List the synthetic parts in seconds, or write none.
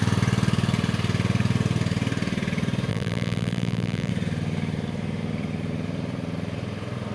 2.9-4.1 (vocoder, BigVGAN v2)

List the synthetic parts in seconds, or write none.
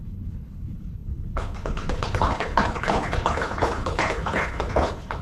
0.0-5.2 (codec, HILCodec)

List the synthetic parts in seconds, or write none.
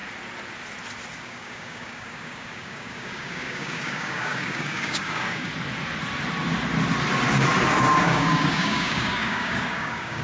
1.2-5.5 (codec, DAC); 8.0-10.2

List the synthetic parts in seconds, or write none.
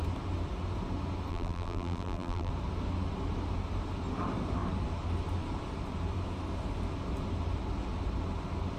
1.3-2.5 (vocoder, BigVGAN v2)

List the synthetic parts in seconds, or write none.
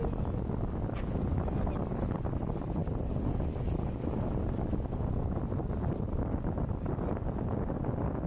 none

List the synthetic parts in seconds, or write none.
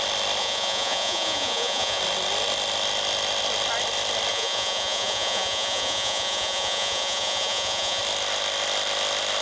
0.4-2.0 (vocoder, Vocos); 4.3-8.0